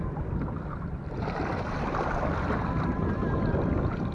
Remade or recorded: remade